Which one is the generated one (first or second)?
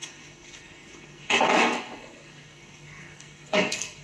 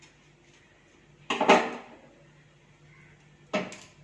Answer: first